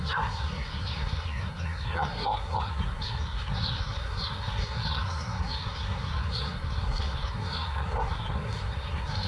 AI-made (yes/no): yes